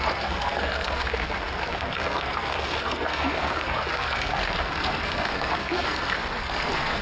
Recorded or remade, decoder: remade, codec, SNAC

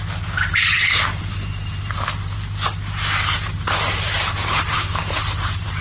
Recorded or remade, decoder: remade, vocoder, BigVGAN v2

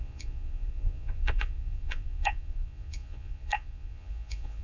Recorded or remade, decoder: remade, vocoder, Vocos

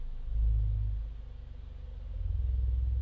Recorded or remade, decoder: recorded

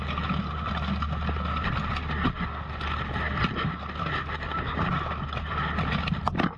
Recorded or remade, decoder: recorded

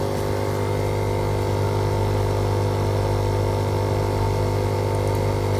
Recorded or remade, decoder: recorded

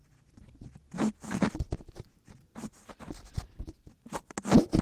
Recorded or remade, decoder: recorded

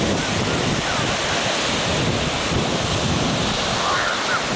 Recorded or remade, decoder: recorded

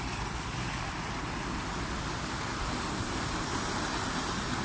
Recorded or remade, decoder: recorded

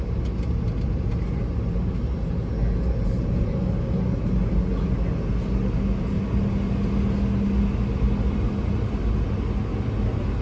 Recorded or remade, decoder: recorded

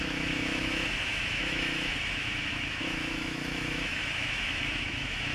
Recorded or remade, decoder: remade, autoencoder, DAC-VAE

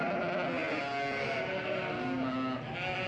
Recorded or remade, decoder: recorded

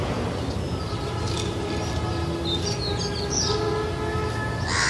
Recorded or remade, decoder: recorded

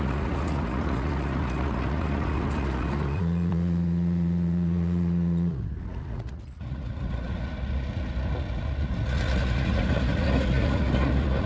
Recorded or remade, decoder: remade, vocoder, Vocos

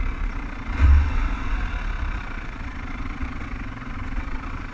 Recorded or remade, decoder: remade, vocoder, WaveNeXt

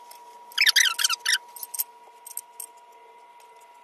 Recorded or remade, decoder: recorded